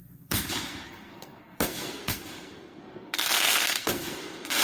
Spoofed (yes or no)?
yes